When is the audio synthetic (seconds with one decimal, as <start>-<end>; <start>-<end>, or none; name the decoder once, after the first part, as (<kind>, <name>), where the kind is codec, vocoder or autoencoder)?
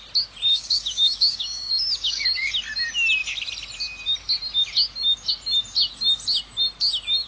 0.5-2.5 (codec, DAC)